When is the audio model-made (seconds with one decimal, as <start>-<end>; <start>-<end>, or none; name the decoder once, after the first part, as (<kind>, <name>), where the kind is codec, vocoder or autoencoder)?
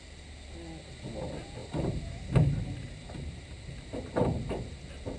1.6-4.7 (vocoder, BigVGAN v2)